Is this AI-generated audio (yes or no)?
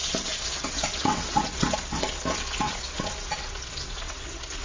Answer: yes